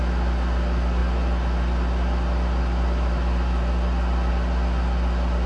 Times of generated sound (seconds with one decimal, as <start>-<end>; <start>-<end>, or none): none